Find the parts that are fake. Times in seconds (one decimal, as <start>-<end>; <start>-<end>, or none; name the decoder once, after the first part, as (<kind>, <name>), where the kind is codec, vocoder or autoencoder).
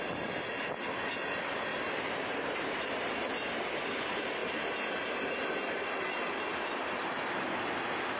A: 1.7-2.8 (vocoder, BigVGAN v2)